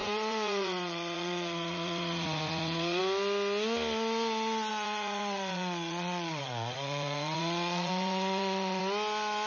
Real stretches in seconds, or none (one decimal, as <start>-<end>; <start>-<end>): 3.0-4.7; 8.8-9.5